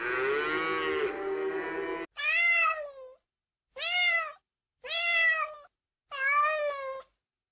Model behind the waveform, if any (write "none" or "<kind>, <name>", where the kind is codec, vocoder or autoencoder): none